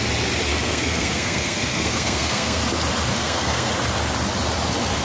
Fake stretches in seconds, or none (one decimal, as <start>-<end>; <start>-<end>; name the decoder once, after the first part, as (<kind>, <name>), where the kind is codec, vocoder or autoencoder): 0.5-2.6 (codec, SNAC); 3.1-3.7